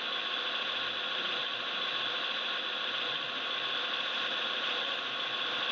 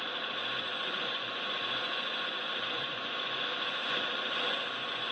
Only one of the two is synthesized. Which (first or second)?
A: second